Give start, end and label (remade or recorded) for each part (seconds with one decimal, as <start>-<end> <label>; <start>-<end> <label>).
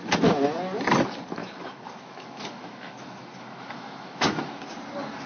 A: 0.0-1.4 recorded; 1.4-4.6 remade; 4.6-5.3 recorded